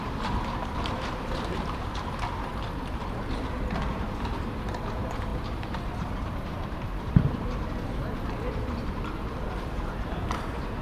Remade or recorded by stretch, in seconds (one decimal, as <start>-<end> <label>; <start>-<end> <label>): 0.0-2.5 remade; 2.5-3.9 recorded; 3.9-10.8 remade

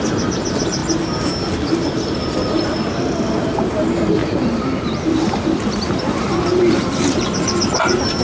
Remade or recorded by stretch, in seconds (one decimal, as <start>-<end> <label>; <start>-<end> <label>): 0.0-4.2 recorded; 4.2-8.2 remade